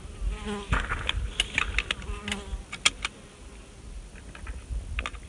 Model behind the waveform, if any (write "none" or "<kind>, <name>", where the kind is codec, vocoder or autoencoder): none